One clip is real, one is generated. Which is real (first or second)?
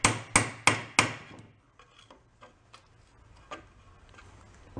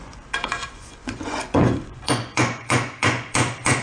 first